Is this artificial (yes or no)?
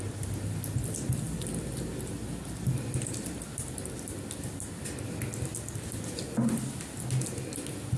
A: no